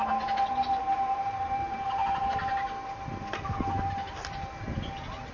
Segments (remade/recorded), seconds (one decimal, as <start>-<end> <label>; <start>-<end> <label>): 0.0-5.3 recorded